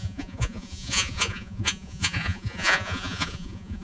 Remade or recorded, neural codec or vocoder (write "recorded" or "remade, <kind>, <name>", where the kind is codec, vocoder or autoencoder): remade, vocoder, Vocos